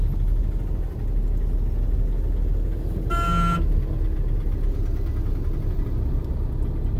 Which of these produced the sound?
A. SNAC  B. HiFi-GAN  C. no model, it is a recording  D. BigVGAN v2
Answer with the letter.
C